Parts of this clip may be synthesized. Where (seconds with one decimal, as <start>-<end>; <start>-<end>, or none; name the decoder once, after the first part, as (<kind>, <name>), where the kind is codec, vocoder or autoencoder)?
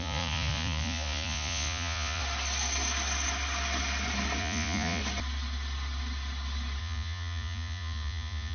0.0-2.2 (vocoder, Vocos); 4.4-5.0; 6.8-8.5